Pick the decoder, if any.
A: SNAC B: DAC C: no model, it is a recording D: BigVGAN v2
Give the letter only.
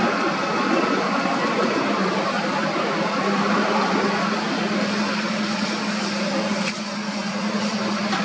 D